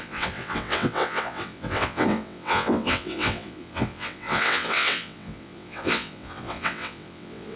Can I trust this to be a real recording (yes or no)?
no